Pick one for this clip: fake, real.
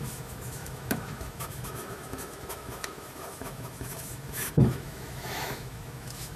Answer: fake